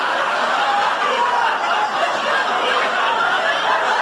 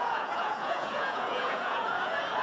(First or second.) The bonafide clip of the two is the first